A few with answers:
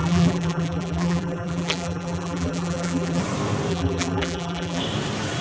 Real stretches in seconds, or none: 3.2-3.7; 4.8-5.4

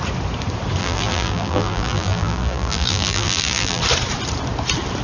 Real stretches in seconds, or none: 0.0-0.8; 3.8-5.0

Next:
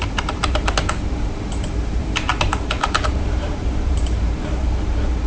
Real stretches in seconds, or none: none

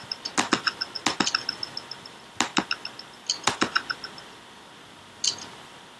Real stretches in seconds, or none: 0.0-6.0

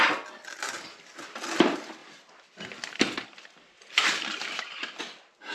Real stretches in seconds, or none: 0.0-2.0; 5.0-5.5

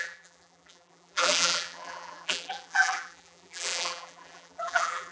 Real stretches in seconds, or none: none

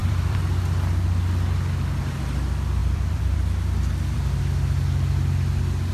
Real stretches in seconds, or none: 0.6-2.8; 4.4-5.9